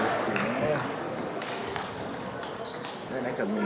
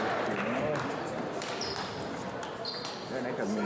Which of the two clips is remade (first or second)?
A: first